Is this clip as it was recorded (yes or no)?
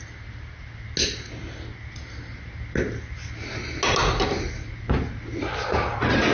yes